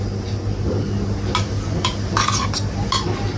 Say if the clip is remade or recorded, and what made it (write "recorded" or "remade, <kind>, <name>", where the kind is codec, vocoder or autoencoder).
recorded